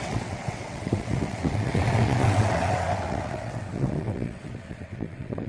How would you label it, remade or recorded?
remade